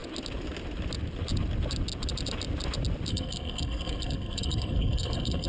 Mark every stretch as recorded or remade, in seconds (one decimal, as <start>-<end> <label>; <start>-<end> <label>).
0.0-3.1 recorded; 3.1-5.5 remade

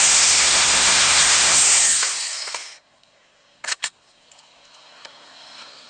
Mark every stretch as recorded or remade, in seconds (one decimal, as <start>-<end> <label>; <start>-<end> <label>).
0.0-5.9 remade

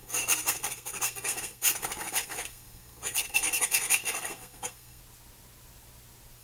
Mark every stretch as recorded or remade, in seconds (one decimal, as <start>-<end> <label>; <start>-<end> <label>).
0.0-5.0 remade; 5.0-6.4 recorded

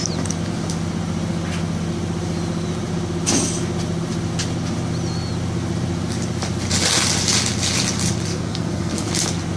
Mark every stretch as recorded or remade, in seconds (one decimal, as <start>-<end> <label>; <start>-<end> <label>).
0.0-8.3 recorded; 8.3-9.1 remade; 9.1-9.6 recorded

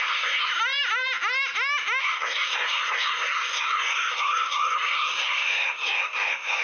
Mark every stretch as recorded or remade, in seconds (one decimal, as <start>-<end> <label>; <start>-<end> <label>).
0.0-0.5 remade; 0.5-2.0 recorded; 2.0-6.6 remade